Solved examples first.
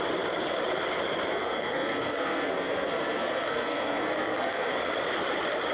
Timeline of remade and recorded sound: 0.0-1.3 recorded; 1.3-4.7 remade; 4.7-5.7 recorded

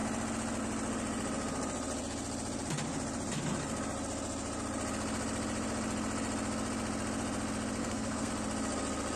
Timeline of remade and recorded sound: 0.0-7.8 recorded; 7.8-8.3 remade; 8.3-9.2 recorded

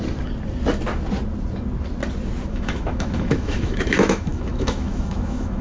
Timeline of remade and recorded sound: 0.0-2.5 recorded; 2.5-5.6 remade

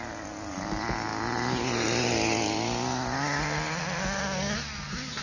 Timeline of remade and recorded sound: 0.0-5.2 recorded

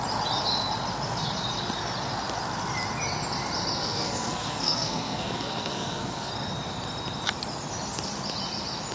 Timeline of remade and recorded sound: 0.0-3.8 recorded; 3.8-6.3 remade; 6.3-8.9 recorded

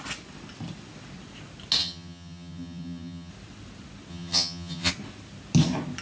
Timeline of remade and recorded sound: 0.0-1.8 recorded; 1.8-3.3 remade; 3.3-4.1 recorded; 4.1-4.9 remade; 4.9-6.0 recorded

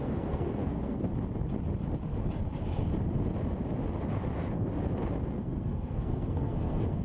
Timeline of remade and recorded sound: 0.0-1.1 remade; 1.1-5.3 recorded; 5.3-7.0 remade